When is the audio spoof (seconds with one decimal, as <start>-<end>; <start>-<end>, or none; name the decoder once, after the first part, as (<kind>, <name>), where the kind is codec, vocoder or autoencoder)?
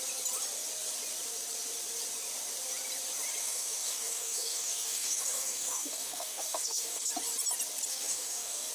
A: 3.4-7.1 (codec, DAC); 7.9-8.7